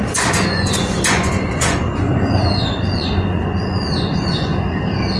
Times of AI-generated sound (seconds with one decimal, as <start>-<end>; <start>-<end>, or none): 0.0-4.5